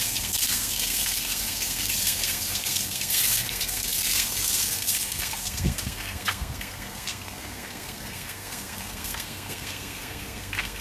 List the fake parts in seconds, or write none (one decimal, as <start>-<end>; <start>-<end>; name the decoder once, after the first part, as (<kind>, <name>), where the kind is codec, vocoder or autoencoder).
0.0-10.8 (codec, SNAC)